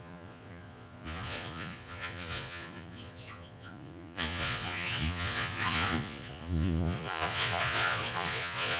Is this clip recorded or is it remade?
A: remade